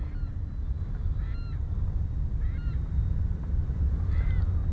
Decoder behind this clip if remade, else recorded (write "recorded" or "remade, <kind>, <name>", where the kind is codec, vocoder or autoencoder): recorded